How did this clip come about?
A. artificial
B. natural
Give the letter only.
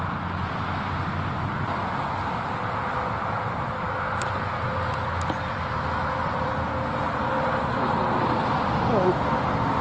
B